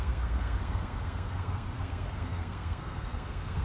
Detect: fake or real fake